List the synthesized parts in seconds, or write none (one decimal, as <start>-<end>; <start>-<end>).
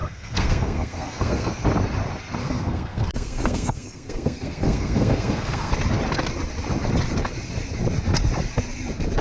0.0-1.6; 2.4-5.7